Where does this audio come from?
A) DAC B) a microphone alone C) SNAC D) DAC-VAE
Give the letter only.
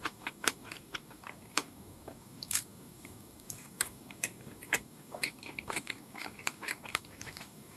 A